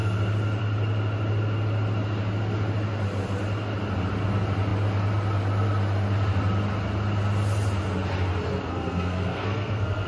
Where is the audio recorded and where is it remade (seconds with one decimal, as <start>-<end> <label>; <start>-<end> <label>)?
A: 0.0-8.7 recorded; 8.7-10.1 remade